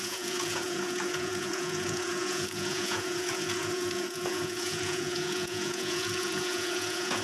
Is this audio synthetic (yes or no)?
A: yes